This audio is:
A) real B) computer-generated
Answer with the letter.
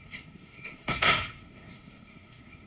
B